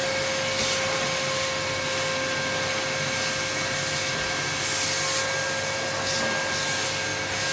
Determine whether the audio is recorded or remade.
recorded